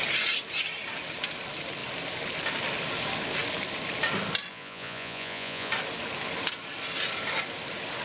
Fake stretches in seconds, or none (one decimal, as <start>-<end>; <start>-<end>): 4.5-5.7